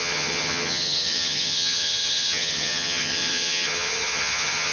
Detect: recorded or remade remade